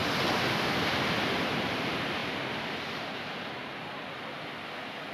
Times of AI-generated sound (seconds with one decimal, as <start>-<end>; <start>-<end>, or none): none